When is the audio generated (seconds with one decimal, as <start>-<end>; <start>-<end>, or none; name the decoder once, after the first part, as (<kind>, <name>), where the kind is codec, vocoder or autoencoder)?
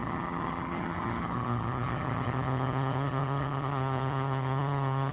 0.0-5.1 (vocoder, HiFi-GAN)